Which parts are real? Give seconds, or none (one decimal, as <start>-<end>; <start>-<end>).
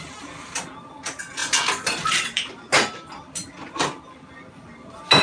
0.0-5.2